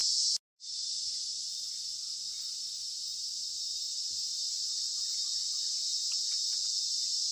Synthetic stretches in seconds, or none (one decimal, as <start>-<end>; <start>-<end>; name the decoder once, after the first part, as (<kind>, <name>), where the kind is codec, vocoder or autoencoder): 3.1-3.7 (vocoder, BigVGAN v2); 4.3-5.0